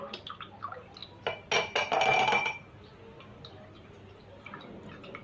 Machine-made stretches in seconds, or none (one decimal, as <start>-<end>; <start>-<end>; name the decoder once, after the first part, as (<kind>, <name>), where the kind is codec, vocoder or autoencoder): none